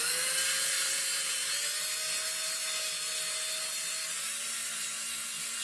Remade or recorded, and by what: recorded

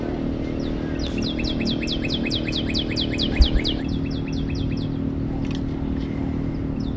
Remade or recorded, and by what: recorded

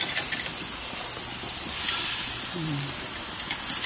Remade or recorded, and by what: recorded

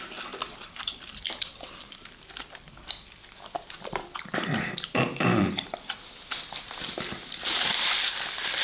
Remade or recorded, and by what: remade, vocoder, BigVGAN v2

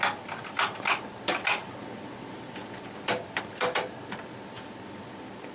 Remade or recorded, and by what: recorded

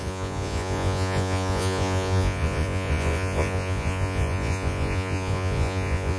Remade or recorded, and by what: remade, vocoder, Vocos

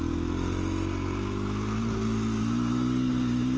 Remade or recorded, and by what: recorded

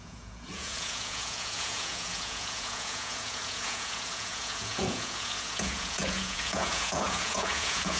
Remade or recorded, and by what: remade, vocoder, Vocos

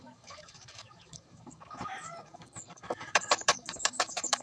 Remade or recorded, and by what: remade, codec, DAC